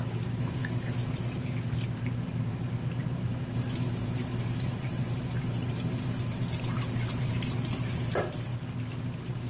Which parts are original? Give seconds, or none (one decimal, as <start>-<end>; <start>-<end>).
0.6-2.0; 8.5-9.0